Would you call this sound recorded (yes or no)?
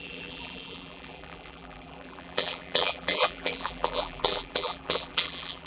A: no